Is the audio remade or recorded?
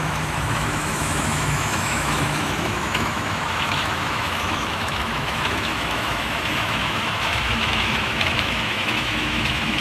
remade